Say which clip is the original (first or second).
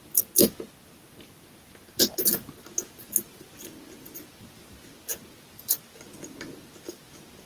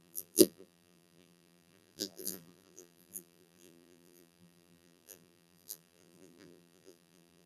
first